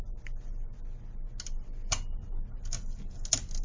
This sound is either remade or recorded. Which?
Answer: recorded